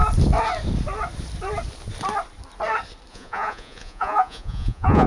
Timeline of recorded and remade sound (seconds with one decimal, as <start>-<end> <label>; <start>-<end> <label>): 0.0-3.1 recorded; 3.1-5.1 remade

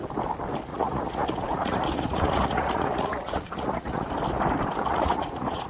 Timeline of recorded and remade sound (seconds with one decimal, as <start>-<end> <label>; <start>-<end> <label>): 0.0-0.7 recorded; 0.7-4.1 remade; 4.1-4.9 recorded; 4.9-5.7 remade

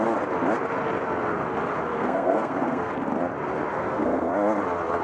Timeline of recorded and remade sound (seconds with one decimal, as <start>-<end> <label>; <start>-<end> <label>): 0.0-1.9 recorded; 1.9-2.9 remade; 2.9-3.7 recorded; 3.7-4.3 remade; 4.3-5.0 recorded

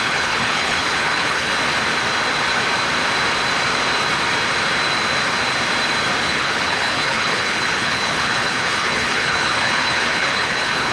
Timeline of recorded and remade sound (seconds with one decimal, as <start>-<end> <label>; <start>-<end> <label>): 0.0-1.5 remade; 1.5-6.2 recorded; 6.2-10.9 remade

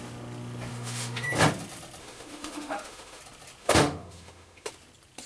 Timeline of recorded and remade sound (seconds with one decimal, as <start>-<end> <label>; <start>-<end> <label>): 0.0-0.7 recorded; 0.7-1.3 remade; 1.3-2.0 recorded; 2.0-3.2 remade; 3.2-3.6 recorded; 3.6-4.7 remade; 4.7-5.3 recorded

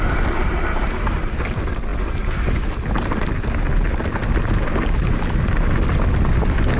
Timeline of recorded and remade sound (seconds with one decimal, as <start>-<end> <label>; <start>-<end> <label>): 0.0-6.8 recorded

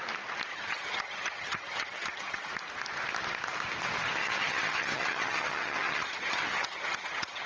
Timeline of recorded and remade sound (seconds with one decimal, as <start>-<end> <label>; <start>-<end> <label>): 0.0-0.5 recorded; 0.5-2.5 remade; 2.5-4.2 recorded; 4.2-7.5 remade

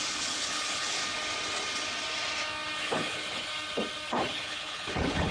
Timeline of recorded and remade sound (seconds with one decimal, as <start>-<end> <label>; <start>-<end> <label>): 0.0-1.0 remade; 1.0-2.8 recorded; 2.8-3.5 remade; 3.5-4.1 recorded; 4.1-5.3 remade